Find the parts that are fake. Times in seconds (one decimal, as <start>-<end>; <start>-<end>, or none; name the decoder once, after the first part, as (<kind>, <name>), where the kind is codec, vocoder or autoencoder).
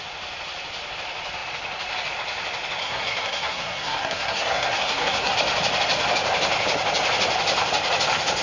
2.8-5.3 (codec, SNAC)